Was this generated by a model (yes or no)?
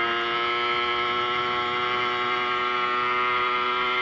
no